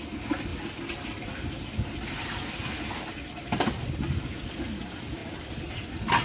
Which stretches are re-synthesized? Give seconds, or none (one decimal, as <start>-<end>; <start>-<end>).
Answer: 5.2-6.2